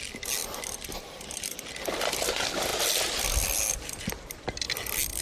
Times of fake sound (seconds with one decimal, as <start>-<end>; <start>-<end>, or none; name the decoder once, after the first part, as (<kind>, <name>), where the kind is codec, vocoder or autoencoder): none

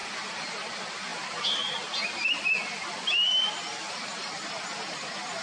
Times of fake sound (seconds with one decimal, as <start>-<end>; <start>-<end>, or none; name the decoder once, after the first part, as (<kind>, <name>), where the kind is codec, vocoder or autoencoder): none

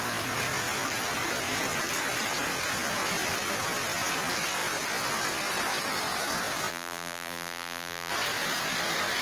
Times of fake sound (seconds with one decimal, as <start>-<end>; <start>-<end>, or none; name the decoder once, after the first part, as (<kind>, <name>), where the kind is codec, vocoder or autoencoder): 6.7-8.1 (vocoder, BigVGAN v2)

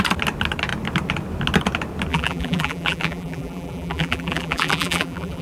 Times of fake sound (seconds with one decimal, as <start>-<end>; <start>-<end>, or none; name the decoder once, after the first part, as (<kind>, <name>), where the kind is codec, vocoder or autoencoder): 2.1-5.4 (vocoder, BigVGAN v2)